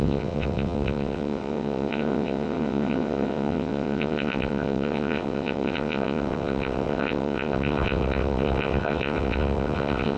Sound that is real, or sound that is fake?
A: fake